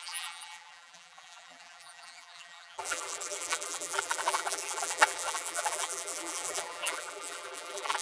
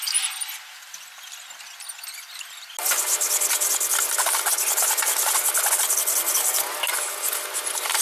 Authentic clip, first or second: second